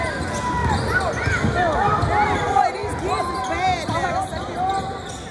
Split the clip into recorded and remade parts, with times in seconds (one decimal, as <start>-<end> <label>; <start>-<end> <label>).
0.0-0.6 recorded; 0.6-1.1 remade; 1.1-5.3 recorded